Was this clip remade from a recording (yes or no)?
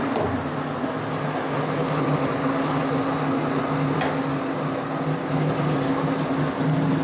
no